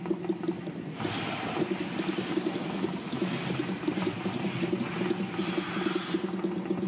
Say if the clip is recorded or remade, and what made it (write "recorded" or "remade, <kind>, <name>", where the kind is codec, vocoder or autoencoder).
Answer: recorded